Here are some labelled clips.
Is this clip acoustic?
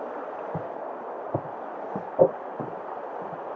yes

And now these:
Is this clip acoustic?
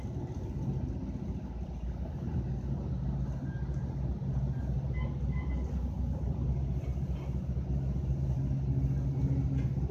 yes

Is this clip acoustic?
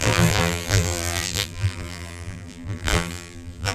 no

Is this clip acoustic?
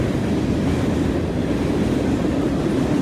yes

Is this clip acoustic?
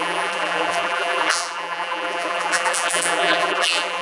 no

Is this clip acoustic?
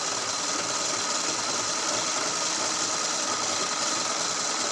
yes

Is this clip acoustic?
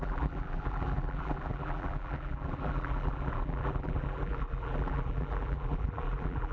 no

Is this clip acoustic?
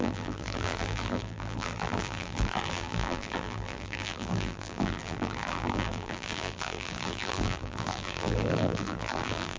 no